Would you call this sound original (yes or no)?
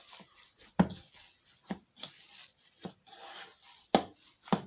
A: yes